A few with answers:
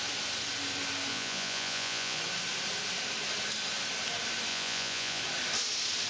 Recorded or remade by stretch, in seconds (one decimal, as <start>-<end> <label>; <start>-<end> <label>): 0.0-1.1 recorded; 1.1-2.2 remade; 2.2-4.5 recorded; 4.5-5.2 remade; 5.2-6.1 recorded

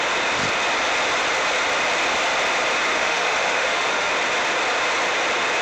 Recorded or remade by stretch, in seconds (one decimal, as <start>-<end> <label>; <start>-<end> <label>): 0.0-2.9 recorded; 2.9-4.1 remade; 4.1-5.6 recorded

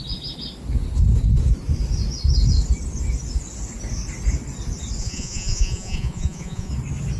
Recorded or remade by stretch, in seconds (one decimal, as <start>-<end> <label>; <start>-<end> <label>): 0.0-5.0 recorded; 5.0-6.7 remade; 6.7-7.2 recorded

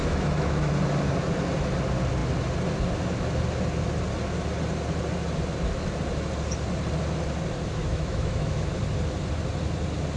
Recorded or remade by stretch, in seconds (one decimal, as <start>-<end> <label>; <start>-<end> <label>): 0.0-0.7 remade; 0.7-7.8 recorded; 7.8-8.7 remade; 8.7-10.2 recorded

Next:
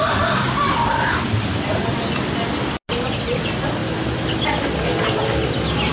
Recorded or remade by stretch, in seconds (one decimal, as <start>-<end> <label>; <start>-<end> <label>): 0.0-5.9 recorded

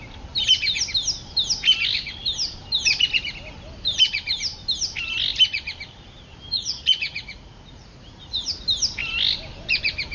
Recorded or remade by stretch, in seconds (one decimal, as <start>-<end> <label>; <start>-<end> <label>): 0.0-6.5 recorded; 6.5-8.5 remade; 8.5-10.1 recorded